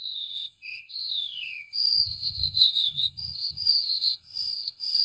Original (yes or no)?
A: no